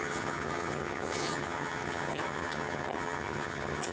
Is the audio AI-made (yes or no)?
yes